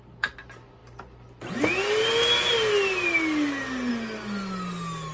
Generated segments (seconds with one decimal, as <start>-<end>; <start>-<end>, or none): none